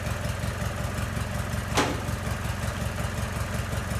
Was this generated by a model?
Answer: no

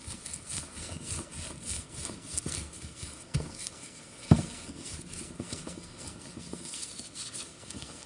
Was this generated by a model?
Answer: yes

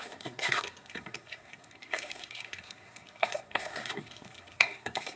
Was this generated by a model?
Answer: yes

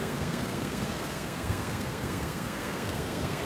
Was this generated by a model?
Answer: yes